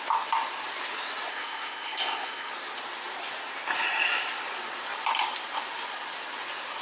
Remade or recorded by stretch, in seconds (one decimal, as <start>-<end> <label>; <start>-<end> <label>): 0.0-1.3 recorded; 1.3-2.5 remade; 2.5-6.8 recorded